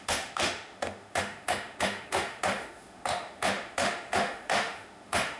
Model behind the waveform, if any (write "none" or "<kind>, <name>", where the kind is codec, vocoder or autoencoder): autoencoder, DAC-VAE